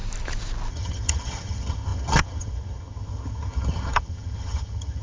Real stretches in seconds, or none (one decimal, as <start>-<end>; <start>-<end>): 0.0-0.7